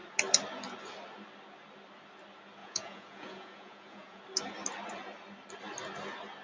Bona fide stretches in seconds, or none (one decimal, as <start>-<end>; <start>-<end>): 0.0-2.6; 4.2-6.4